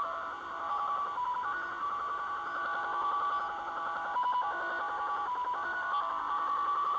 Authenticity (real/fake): real